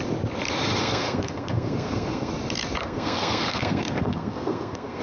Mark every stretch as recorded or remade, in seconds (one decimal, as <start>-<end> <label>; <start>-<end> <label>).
0.0-0.8 recorded; 0.8-2.3 remade; 2.3-2.8 recorded; 2.8-5.0 remade

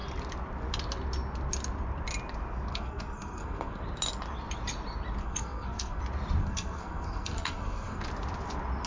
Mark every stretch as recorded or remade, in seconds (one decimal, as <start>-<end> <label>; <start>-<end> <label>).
0.0-2.7 recorded; 2.7-3.8 remade; 3.8-5.2 recorded; 5.2-6.0 remade; 6.0-6.4 recorded; 6.4-8.0 remade; 8.0-8.9 recorded

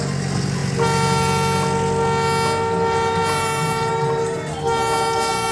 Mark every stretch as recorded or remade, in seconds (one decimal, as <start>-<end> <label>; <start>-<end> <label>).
0.0-5.5 recorded

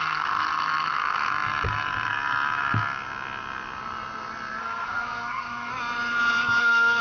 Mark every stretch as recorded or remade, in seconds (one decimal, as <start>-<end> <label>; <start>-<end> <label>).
0.0-1.3 remade; 1.3-4.6 recorded; 4.6-5.7 remade; 5.7-6.6 recorded; 6.6-7.0 remade

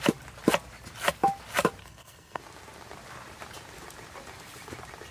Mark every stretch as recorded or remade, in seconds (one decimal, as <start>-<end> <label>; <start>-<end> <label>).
0.0-1.8 recorded; 1.8-2.4 remade; 2.4-5.1 recorded

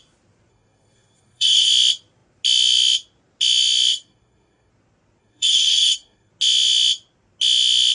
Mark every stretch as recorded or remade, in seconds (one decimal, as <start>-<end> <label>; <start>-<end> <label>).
0.0-0.5 recorded; 0.5-1.7 remade; 1.7-3.9 recorded; 3.9-4.7 remade; 4.7-5.2 recorded; 5.2-6.3 remade; 6.3-7.9 recorded

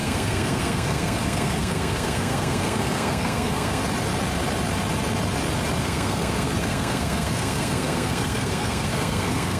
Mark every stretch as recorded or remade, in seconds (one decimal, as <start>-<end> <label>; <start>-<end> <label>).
0.0-3.8 remade; 3.8-5.8 recorded; 5.8-9.6 remade

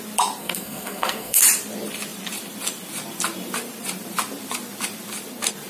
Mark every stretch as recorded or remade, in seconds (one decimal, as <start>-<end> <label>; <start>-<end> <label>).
0.0-0.4 recorded; 0.4-1.4 remade; 1.4-5.7 recorded